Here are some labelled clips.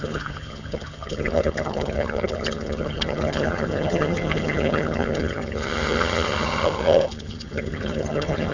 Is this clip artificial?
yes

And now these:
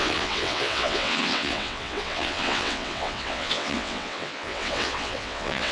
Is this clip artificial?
yes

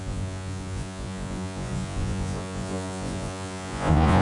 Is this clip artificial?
yes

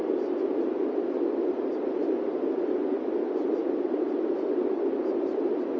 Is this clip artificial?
no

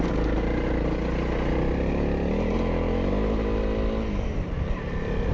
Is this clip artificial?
no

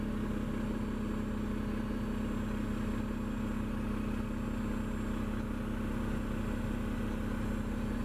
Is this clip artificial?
no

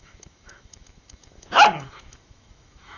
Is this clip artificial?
yes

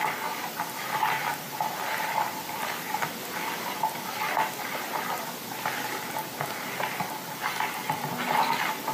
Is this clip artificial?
no